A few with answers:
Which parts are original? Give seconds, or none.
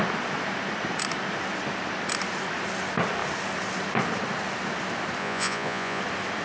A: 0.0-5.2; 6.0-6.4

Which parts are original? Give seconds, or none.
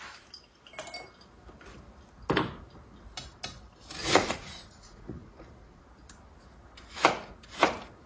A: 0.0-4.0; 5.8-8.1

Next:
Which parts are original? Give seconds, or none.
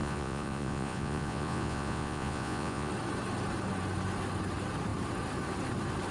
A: 2.9-6.1